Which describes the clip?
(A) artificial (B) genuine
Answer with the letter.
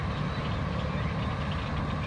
B